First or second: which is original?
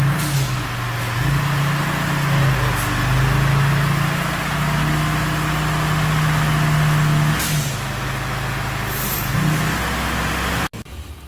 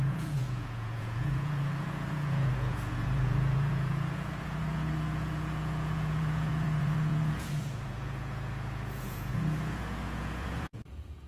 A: first